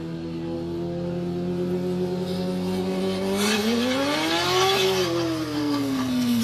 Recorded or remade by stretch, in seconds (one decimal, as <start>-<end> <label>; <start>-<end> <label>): 0.0-5.6 recorded; 5.6-6.4 remade